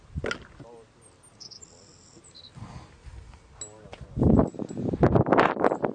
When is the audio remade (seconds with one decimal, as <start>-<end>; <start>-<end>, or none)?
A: none